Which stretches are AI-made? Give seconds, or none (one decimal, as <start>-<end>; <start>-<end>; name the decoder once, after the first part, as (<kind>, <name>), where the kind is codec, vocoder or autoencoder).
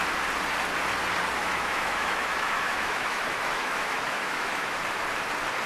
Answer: 1.4-4.8 (autoencoder, DAC-VAE)